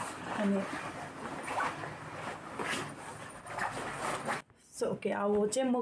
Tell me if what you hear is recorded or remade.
recorded